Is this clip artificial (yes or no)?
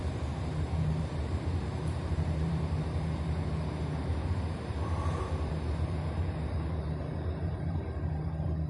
yes